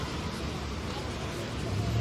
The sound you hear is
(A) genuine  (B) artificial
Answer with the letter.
A